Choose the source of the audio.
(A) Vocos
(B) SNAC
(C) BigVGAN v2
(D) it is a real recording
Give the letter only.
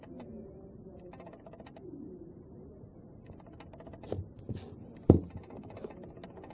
D